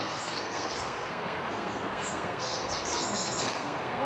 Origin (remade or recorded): remade